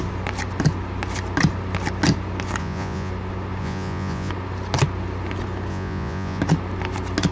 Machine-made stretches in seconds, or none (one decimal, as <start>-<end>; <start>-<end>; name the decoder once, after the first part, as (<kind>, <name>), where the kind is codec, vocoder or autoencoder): 2.6-3.1 (vocoder, Vocos); 3.6-4.3; 5.7-6.4